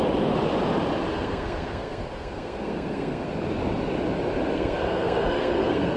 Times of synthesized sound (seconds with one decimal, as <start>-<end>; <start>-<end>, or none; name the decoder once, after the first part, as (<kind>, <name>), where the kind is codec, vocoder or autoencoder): 1.1-3.3 (codec, SNAC); 4.5-6.0